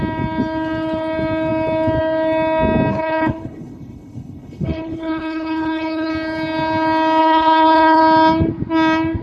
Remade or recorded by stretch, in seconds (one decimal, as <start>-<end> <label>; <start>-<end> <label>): 0.0-2.9 recorded; 2.9-6.1 remade; 6.1-7.2 recorded; 7.2-8.0 remade; 8.0-9.2 recorded